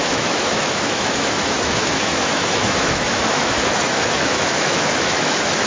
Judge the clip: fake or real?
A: fake